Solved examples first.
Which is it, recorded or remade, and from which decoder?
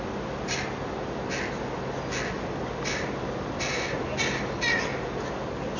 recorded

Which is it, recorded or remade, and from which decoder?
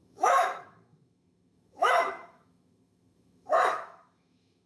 remade, autoencoder, DAC-VAE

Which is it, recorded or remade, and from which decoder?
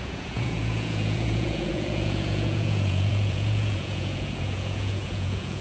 remade, vocoder, Vocos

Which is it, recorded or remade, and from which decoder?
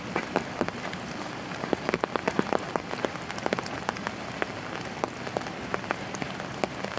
recorded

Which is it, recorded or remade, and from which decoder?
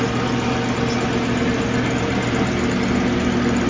recorded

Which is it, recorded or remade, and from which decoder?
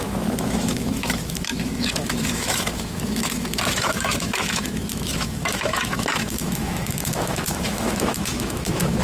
remade, autoencoder, DAC-VAE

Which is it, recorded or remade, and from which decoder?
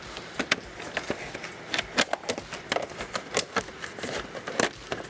recorded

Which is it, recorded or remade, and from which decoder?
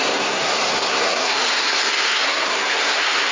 remade, codec, SNAC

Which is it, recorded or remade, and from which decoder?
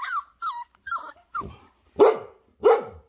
remade, vocoder, BigVGAN v2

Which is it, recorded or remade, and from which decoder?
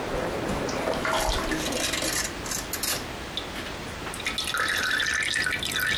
recorded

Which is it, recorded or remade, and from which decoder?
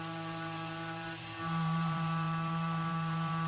remade, vocoder, BigVGAN v2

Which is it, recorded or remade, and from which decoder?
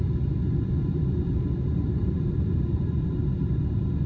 recorded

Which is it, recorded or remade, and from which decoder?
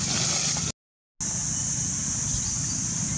recorded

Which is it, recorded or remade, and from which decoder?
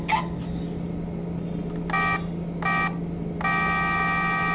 recorded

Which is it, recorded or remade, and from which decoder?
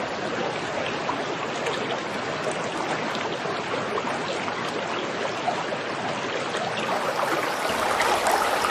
recorded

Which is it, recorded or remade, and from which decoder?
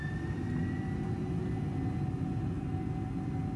recorded